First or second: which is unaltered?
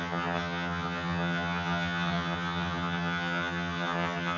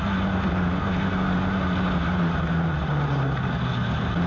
second